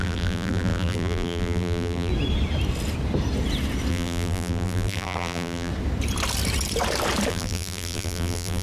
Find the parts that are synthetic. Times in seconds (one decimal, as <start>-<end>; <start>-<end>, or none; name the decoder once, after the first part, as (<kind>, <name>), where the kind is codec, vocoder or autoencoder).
0.0-2.1 (vocoder, BigVGAN v2); 3.9-5.7; 7.3-8.6

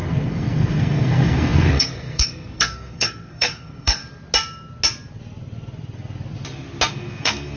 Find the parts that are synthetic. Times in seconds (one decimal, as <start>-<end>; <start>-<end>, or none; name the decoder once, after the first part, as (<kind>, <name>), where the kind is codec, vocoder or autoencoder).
0.0-4.0 (codec, SNAC); 6.9-7.6

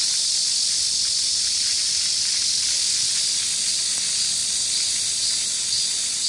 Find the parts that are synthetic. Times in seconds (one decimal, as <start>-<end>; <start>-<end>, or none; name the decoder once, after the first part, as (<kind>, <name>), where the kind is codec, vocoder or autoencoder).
1.2-2.3 (vocoder, BigVGAN v2)

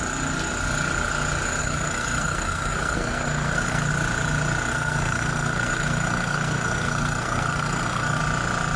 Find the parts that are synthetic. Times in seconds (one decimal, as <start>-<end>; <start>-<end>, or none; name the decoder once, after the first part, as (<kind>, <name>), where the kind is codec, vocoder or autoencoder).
1.6-3.9 (codec, SNAC); 4.7-8.2

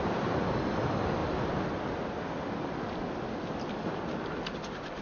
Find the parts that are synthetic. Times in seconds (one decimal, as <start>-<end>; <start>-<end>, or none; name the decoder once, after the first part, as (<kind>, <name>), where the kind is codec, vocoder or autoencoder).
none

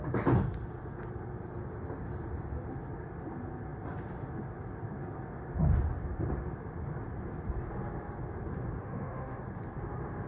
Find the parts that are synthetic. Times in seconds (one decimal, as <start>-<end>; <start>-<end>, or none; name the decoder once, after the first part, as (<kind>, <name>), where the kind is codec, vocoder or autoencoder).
8.8-9.4 (autoencoder, DAC-VAE)